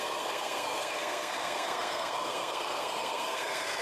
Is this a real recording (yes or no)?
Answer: no